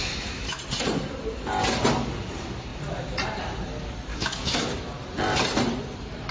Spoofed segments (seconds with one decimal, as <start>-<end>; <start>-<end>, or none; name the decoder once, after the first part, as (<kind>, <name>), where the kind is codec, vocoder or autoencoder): 0.0-0.6 (autoencoder, DAC-VAE); 4.1-4.6